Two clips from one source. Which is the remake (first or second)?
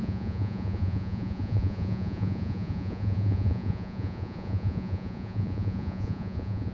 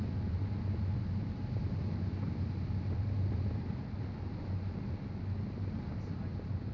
first